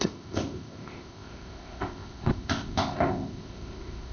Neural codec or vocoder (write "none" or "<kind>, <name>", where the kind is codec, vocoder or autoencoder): codec, ZipCodec